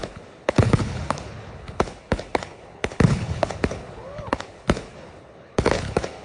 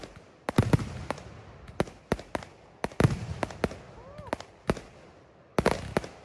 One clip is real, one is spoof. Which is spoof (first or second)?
first